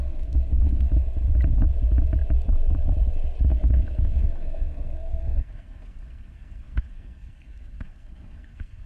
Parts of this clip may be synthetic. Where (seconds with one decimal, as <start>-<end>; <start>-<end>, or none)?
0.0-0.9; 3.5-8.9